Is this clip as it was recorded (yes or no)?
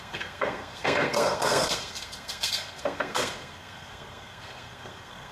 no